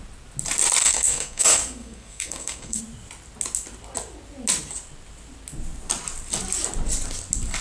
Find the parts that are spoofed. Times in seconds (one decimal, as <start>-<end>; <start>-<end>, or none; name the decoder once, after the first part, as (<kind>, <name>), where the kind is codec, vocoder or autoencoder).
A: 0.8-2.8 (codec, SNAC)